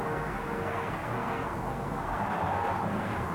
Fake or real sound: fake